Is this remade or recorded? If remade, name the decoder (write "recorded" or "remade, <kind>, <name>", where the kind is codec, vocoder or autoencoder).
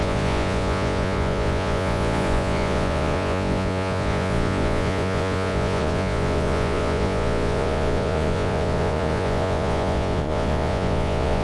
remade, vocoder, Vocos